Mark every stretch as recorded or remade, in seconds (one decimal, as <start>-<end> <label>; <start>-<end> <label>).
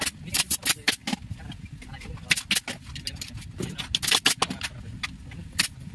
0.0-5.9 recorded